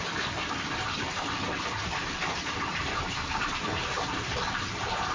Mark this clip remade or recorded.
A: recorded